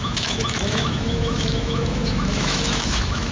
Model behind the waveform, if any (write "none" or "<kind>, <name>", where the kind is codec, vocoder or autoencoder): autoencoder, DAC-VAE